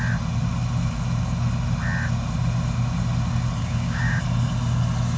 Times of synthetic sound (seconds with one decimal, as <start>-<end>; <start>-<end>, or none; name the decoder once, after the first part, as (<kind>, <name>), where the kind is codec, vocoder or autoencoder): 3.6-4.2 (codec, DAC)

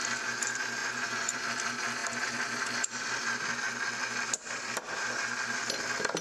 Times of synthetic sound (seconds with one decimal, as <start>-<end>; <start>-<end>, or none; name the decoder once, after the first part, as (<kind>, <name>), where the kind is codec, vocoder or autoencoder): 0.8-1.4 (vocoder, Vocos)

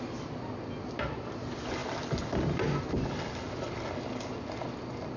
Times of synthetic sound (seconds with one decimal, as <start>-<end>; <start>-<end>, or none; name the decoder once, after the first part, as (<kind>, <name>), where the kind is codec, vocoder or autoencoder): none

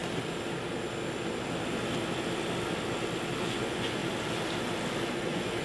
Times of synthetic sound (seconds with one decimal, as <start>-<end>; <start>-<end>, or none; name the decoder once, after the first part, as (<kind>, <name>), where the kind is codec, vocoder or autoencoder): 3.4-4.0 (vocoder, Vocos); 5.1-5.6

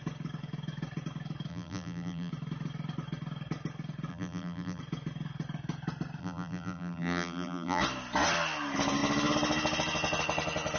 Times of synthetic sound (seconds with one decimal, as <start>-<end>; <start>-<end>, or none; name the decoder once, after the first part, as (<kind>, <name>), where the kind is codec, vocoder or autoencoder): 1.5-2.3 (vocoder, BigVGAN v2); 4.1-4.8; 6.2-7.8